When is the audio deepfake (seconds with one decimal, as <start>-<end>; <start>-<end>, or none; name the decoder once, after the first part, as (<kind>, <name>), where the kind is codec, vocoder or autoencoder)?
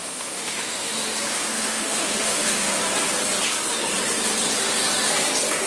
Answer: 0.0-0.9 (autoencoder, DAC-VAE); 1.3-2.8